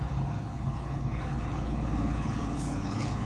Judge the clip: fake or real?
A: fake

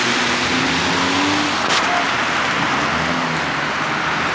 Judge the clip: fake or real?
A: real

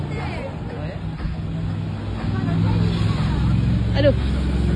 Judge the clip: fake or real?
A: real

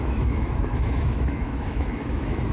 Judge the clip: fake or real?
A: fake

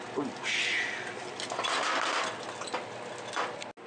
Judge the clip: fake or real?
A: real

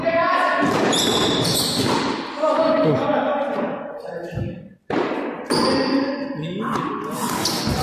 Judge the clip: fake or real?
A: real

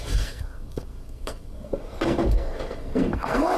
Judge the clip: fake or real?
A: fake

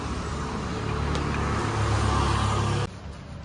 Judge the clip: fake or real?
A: real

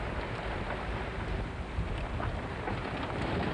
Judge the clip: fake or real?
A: real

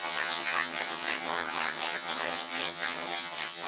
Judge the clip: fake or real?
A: fake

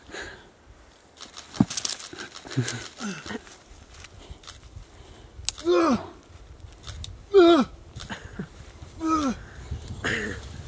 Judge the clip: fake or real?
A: real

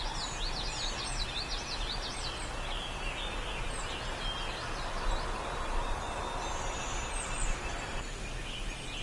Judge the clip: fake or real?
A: real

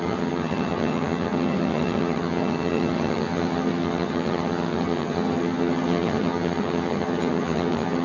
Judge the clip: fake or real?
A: fake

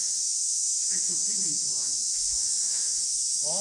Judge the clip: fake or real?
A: fake